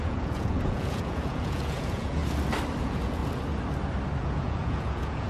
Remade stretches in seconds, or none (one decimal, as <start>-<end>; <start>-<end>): 0.0-2.2; 2.8-3.2; 4.2-5.3